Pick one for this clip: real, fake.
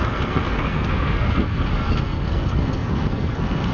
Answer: fake